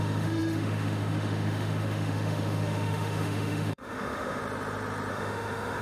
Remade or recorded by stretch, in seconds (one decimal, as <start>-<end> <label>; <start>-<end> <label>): 0.0-4.4 remade; 4.4-5.1 recorded; 5.1-5.8 remade